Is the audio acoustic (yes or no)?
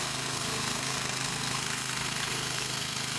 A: no